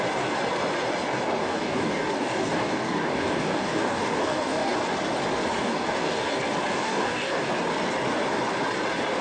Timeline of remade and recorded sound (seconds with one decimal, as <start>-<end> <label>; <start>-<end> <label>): 0.0-1.4 recorded; 1.4-4.8 remade; 4.8-5.6 recorded; 5.6-6.3 remade; 6.3-6.7 recorded; 6.7-7.5 remade; 7.5-9.2 recorded